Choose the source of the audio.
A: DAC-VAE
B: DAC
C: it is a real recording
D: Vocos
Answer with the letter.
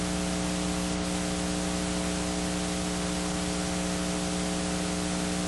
C